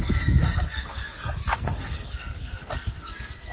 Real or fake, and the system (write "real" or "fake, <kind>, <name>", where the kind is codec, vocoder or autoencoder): fake, codec, SNAC